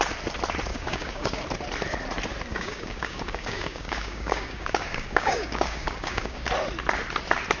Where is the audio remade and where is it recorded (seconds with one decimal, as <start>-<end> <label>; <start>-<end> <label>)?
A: 0.0-0.7 recorded; 0.7-1.4 remade; 1.4-2.5 recorded; 2.5-6.5 remade; 6.5-7.6 recorded